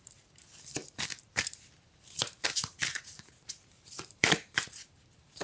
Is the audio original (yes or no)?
no